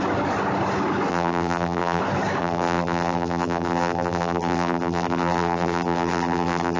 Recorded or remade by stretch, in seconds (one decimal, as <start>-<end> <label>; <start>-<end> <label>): 0.0-1.1 recorded; 1.1-2.0 remade; 2.0-2.4 recorded; 2.4-6.8 remade

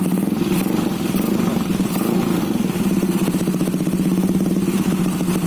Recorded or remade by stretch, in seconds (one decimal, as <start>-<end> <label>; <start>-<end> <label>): 0.0-1.5 recorded; 1.5-4.5 remade; 4.5-5.5 recorded

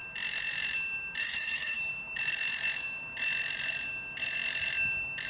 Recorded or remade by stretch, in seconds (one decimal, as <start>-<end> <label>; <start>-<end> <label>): 0.0-1.2 recorded; 1.2-1.9 remade; 1.9-5.3 recorded

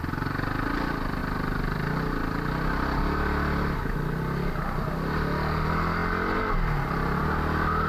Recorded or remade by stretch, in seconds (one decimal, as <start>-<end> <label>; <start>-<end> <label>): 0.0-7.9 recorded

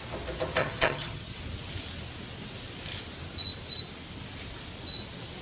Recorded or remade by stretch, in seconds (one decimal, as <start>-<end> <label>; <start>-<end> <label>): 0.0-0.6 recorded; 0.6-1.4 remade; 1.4-5.4 recorded

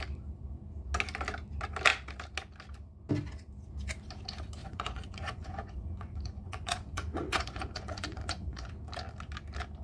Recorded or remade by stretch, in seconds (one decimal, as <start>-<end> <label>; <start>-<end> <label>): 0.0-4.6 recorded; 4.6-8.7 remade; 8.7-9.8 recorded

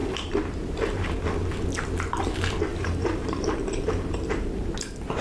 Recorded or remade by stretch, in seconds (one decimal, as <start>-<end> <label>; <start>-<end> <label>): 0.0-1.1 remade; 1.1-2.7 recorded; 2.7-4.7 remade; 4.7-5.2 recorded